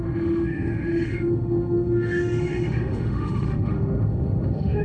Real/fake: fake